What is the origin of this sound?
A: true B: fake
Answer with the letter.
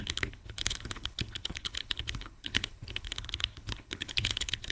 B